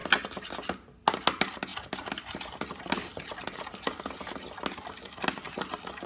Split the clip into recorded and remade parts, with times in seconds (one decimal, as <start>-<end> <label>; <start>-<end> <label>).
0.0-6.1 recorded